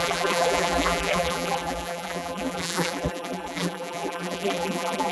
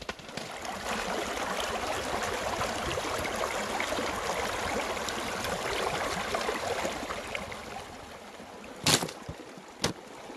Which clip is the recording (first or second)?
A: second